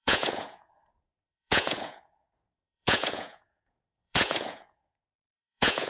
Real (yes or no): no